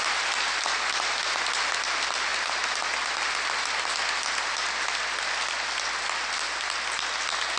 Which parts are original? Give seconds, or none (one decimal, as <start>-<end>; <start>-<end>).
0.0-7.6